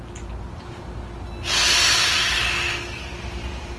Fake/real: real